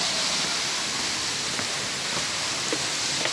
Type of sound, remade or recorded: recorded